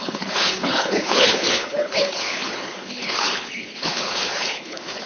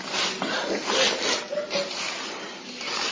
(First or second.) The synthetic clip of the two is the first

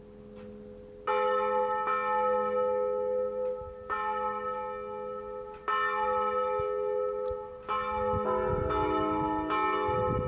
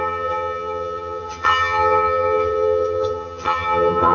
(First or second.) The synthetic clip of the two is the second